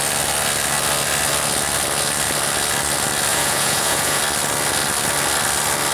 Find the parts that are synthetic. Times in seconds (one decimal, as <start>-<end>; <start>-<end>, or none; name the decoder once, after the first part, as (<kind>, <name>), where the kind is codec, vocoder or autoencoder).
3.3-4.2 (vocoder, Vocos)